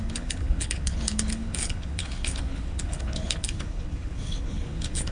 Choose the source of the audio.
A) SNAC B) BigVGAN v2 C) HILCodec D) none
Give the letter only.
C